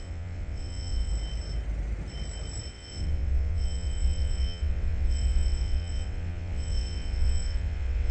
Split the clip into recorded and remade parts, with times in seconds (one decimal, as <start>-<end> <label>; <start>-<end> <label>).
0.0-1.1 remade; 1.1-2.7 recorded; 2.7-8.1 remade